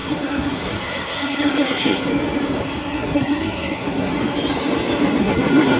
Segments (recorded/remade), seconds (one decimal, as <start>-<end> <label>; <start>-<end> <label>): 0.0-2.1 remade; 2.1-2.8 recorded; 2.8-4.1 remade; 4.1-5.2 recorded; 5.2-5.8 remade